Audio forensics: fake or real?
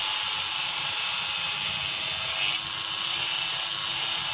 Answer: real